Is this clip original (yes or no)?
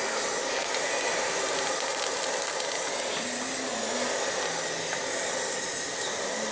yes